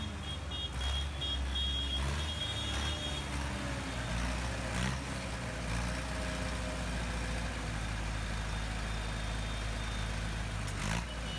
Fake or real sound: real